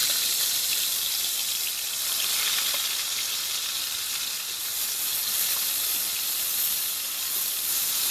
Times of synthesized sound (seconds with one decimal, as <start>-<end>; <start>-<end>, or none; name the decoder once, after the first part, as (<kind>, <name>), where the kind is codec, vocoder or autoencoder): 0.0-1.4 (vocoder, BigVGAN v2)